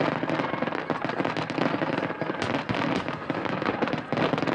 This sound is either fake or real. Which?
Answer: real